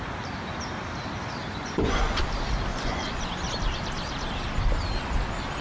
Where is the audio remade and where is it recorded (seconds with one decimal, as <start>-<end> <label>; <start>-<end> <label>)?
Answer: 0.0-1.5 recorded; 1.5-2.2 remade; 2.2-2.7 recorded; 2.7-3.2 remade; 3.2-5.6 recorded